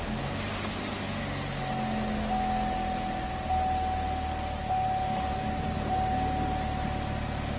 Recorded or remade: recorded